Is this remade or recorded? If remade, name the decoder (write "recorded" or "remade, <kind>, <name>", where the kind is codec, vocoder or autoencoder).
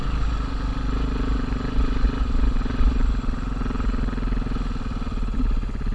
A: recorded